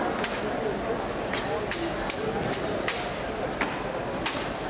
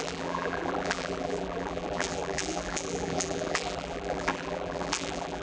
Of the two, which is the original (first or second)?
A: first